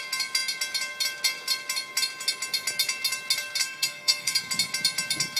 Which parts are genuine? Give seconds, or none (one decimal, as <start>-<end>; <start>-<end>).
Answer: 0.0-3.6; 4.4-5.4